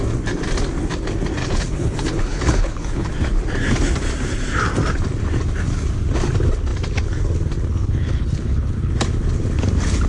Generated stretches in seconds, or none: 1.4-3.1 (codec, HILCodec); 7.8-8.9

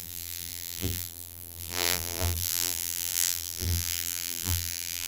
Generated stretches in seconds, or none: 0.0-5.1 (vocoder, BigVGAN v2)

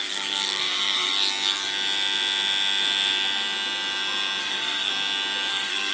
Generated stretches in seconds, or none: 0.0-1.1 (codec, SNAC); 4.4-4.9; 5.5-5.9

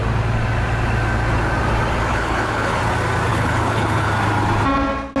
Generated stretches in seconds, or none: 2.1-2.8 (codec, HILCodec); 3.3-4.1

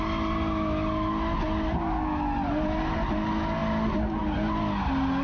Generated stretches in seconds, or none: none

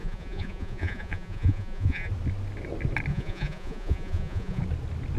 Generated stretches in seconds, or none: 0.0-2.1 (vocoder, Vocos); 3.1-4.6

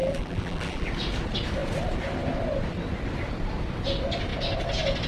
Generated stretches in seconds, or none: 0.0-0.9 (vocoder, BigVGAN v2)